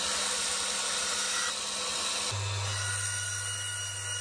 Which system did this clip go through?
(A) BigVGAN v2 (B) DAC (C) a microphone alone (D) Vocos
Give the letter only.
C